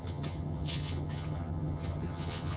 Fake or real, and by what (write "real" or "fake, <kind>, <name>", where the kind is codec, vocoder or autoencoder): fake, vocoder, HiFi-GAN